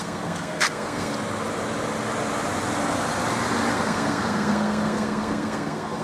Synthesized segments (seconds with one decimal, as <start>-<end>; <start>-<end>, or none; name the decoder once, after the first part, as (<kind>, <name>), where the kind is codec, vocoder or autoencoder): 0.0-1.1 (codec, SNAC); 3.7-6.0